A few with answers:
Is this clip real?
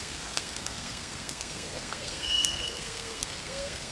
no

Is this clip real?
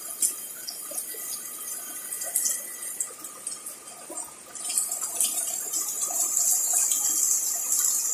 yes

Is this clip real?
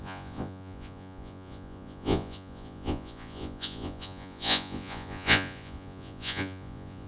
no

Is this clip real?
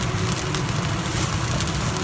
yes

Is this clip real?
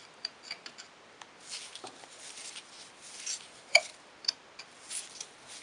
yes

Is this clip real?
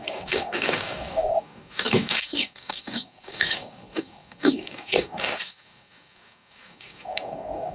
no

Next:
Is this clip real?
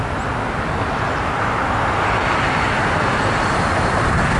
yes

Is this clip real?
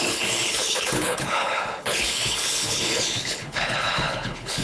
no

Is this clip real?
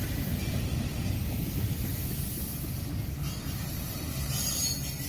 no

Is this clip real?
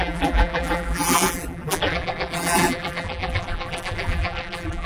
no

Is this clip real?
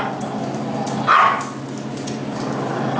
yes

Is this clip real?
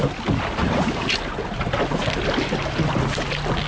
yes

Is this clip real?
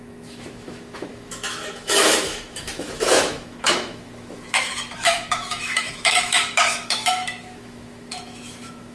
no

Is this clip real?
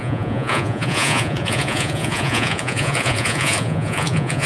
no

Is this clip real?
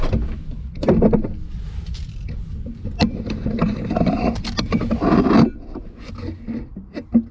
yes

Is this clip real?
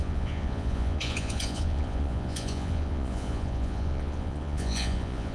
no